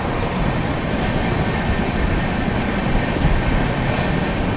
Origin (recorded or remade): recorded